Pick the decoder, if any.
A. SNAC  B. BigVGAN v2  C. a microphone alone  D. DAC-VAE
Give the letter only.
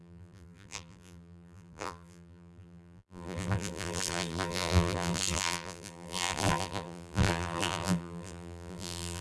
B